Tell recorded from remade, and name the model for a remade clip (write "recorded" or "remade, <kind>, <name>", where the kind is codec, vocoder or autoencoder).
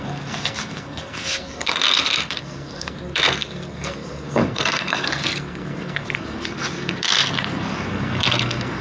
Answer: remade, codec, SNAC